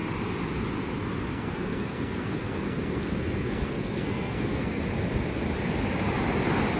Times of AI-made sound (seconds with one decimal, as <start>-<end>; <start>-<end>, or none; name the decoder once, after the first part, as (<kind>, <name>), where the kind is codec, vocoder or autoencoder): 1.3-4.8 (codec, SNAC)